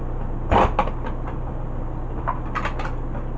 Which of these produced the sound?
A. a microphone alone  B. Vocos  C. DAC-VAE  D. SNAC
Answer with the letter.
A